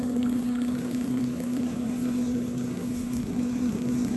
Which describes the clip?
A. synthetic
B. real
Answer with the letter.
A